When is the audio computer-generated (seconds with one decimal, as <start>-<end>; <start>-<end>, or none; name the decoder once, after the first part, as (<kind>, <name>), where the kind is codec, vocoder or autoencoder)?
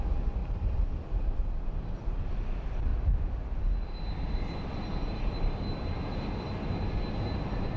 none